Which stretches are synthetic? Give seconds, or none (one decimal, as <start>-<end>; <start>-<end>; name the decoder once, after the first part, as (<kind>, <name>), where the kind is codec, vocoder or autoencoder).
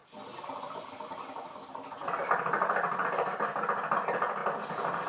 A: 0.0-5.1 (vocoder, BigVGAN v2)